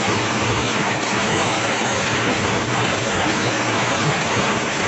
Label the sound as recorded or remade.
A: remade